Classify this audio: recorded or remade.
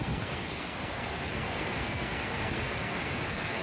remade